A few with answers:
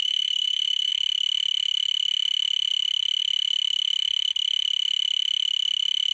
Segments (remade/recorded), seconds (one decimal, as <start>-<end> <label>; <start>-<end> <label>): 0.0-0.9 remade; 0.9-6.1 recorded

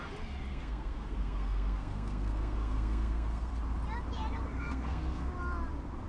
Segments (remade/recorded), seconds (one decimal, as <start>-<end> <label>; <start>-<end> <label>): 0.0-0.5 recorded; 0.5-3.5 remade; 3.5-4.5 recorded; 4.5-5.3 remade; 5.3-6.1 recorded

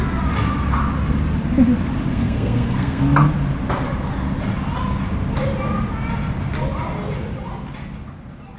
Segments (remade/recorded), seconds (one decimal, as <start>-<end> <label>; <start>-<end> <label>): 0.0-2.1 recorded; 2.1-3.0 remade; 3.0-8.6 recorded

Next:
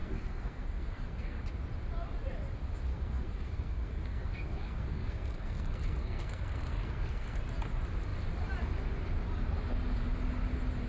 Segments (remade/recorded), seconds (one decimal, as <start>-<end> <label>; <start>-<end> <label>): 0.0-1.4 remade; 1.4-2.9 recorded; 2.9-7.4 remade; 7.4-10.9 recorded

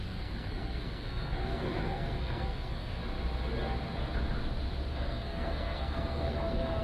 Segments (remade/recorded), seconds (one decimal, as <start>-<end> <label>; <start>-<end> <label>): 0.0-3.0 remade; 3.0-4.9 recorded; 4.9-6.8 remade